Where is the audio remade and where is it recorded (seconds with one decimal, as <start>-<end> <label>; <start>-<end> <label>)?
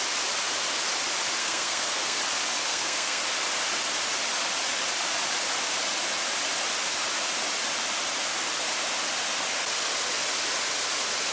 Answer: 0.0-1.4 recorded; 1.4-2.2 remade; 2.2-2.7 recorded; 2.7-3.2 remade; 3.2-11.3 recorded